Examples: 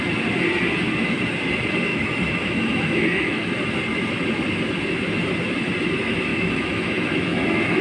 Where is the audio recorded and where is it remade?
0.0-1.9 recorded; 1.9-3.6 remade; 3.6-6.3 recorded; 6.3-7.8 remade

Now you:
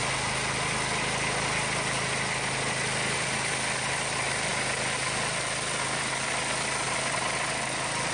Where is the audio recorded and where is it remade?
0.0-8.1 recorded

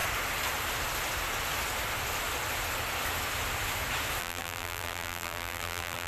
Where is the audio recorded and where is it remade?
0.0-4.2 recorded; 4.2-6.1 remade

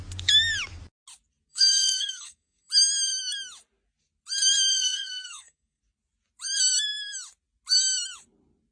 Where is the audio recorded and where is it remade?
0.0-1.5 recorded; 1.5-2.7 remade; 2.7-4.7 recorded; 4.7-5.8 remade; 5.8-8.7 recorded

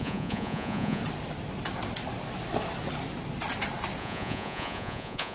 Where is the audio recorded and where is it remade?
0.0-1.0 remade; 1.0-4.0 recorded; 4.0-5.3 remade

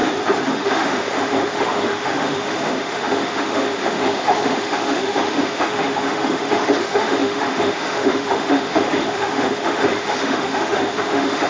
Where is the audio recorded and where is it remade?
0.0-0.5 recorded; 0.5-11.5 remade

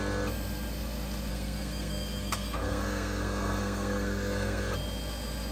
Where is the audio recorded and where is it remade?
0.0-1.3 recorded; 1.3-4.6 remade; 4.6-5.5 recorded